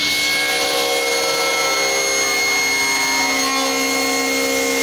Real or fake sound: real